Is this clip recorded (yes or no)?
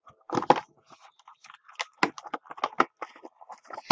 yes